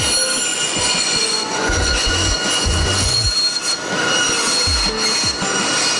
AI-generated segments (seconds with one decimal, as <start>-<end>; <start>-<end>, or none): 0.5-3.2